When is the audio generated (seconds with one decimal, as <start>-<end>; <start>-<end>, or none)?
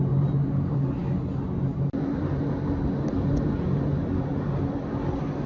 none